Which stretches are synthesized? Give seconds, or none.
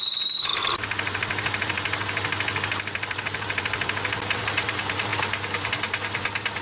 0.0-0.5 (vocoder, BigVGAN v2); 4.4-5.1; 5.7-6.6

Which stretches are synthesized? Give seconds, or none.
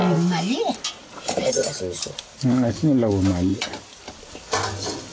1.0-2.7 (vocoder, BigVGAN v2); 3.5-4.0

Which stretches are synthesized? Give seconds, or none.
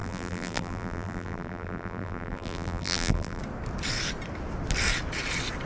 0.0-3.4 (vocoder, BigVGAN v2)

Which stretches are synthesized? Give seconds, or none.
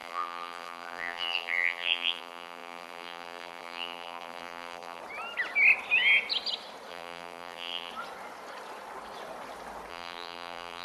0.0-5.0 (vocoder, BigVGAN v2); 6.9-7.9; 9.9-10.8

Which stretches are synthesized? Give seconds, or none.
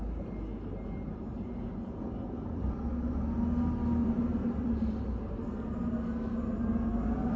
4.0-5.3 (vocoder, BigVGAN v2)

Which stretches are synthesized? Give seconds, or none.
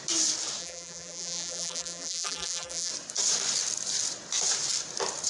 0.6-2.9 (vocoder, BigVGAN v2)